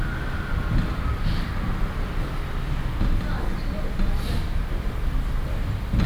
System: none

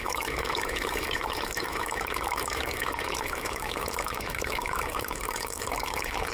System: autoencoder, DAC-VAE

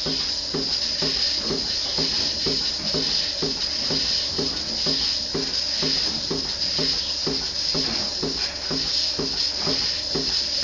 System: none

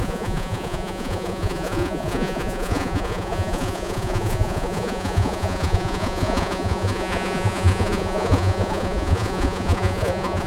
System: vocoder, Vocos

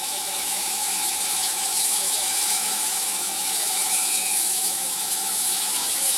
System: autoencoder, DAC-VAE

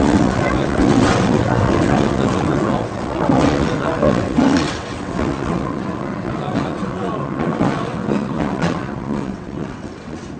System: vocoder, WaveNeXt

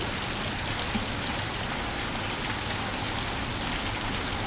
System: none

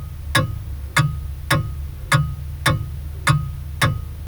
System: none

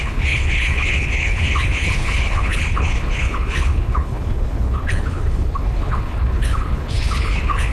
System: codec, HILCodec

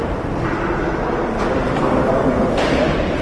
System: vocoder, BigVGAN v2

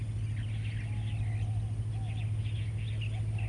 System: none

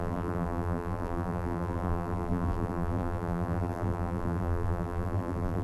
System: vocoder, BigVGAN v2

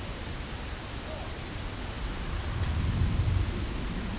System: none